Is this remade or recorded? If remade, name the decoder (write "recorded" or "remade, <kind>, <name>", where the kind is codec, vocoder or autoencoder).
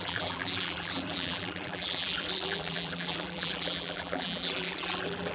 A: remade, vocoder, BigVGAN v2